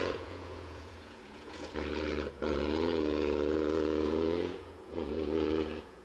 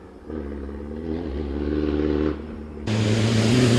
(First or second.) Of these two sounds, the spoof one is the first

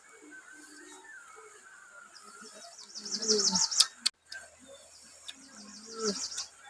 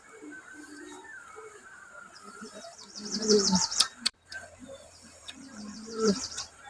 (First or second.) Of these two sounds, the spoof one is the second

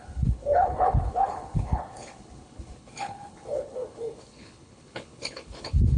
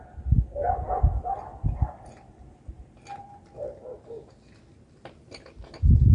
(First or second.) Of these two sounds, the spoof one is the first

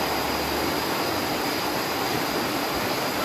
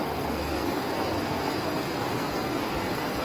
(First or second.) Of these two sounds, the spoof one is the second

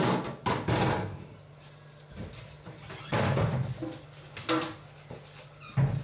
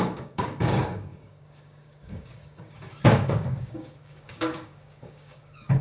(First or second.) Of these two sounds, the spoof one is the second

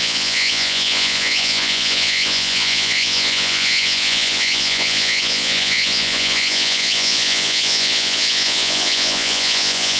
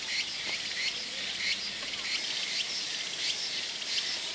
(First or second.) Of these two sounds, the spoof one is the first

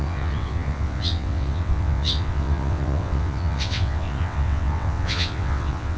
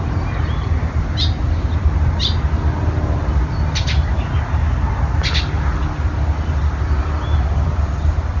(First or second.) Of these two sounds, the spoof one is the first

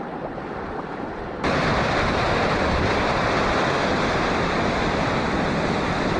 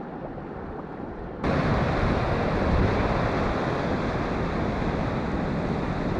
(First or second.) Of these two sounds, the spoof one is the first